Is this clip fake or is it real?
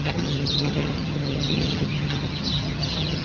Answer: fake